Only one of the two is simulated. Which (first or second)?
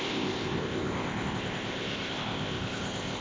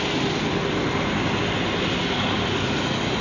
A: first